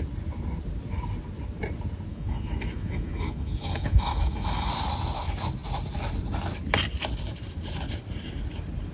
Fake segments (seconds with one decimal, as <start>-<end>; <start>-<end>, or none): 2.1-4.7